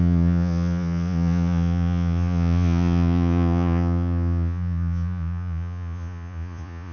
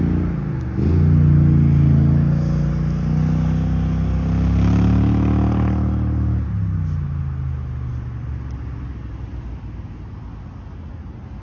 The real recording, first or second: second